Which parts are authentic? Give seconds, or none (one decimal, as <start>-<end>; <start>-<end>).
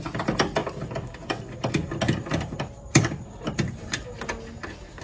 0.0-2.2; 4.0-5.0